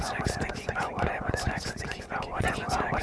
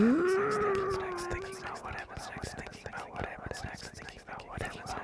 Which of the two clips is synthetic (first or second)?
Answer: first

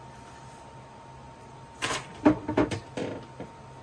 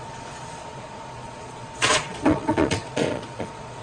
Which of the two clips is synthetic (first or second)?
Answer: second